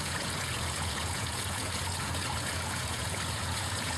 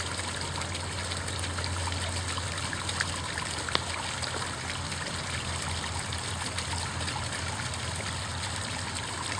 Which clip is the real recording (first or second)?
second